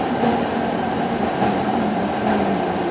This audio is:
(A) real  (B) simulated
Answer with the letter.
A